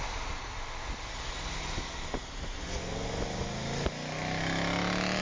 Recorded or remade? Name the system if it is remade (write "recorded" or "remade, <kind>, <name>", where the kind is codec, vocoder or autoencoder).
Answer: recorded